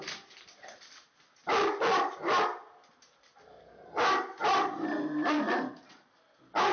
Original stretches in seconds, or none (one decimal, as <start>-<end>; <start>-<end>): 0.0-6.7